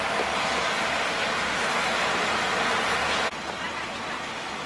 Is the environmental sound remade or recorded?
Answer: recorded